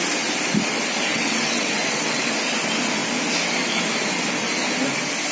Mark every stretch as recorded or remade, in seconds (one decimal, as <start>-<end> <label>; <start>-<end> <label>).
0.0-1.1 recorded; 1.1-2.3 remade; 2.3-5.3 recorded